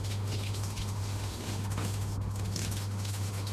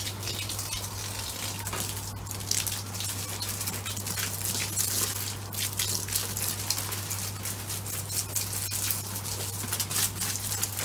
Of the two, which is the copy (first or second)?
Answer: first